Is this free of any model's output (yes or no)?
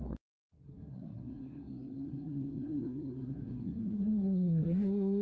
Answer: no